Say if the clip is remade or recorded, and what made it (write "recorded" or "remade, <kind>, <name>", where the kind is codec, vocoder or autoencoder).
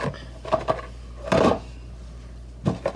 recorded